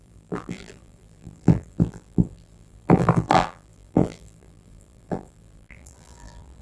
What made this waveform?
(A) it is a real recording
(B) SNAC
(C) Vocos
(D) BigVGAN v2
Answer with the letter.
D